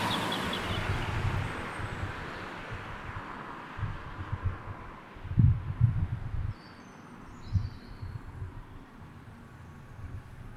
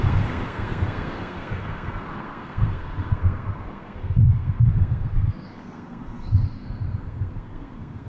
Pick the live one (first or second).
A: first